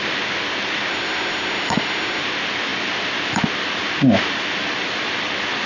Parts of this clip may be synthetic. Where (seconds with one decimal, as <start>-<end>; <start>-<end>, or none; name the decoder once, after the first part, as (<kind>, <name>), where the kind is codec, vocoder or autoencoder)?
0.9-2.2 (autoencoder, DAC-VAE)